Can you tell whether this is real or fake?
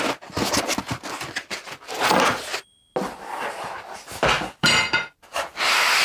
real